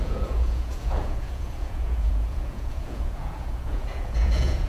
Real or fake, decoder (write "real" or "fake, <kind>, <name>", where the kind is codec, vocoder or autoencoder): fake, vocoder, Vocos